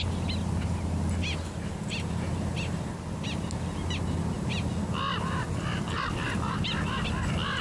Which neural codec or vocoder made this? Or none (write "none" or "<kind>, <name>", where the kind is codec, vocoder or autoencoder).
none